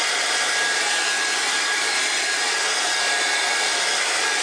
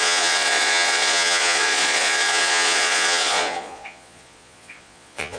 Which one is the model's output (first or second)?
second